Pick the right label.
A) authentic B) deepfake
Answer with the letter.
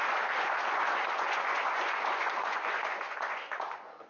B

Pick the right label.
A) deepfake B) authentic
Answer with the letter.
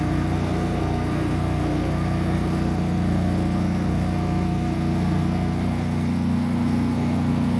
A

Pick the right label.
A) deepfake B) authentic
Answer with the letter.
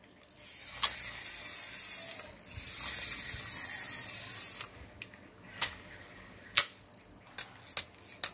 B